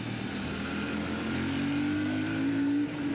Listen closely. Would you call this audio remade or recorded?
recorded